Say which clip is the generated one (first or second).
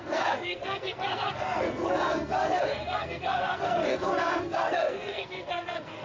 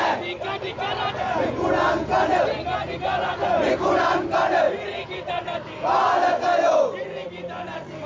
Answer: first